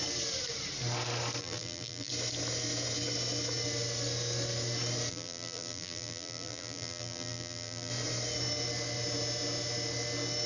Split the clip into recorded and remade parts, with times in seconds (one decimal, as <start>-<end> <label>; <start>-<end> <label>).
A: 0.0-1.4 recorded; 1.4-2.1 remade; 2.1-5.1 recorded; 5.1-7.9 remade; 7.9-10.5 recorded